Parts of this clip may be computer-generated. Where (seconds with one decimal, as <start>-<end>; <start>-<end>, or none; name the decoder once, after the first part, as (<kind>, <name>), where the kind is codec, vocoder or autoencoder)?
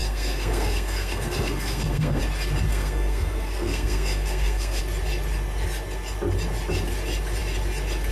0.0-2.2 (codec, SNAC); 2.7-4.8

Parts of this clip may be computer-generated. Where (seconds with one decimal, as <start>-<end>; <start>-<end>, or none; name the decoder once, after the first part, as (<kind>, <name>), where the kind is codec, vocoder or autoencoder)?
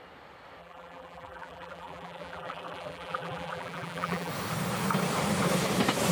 0.6-4.3 (vocoder, BigVGAN v2)